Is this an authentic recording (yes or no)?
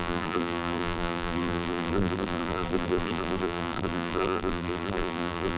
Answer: no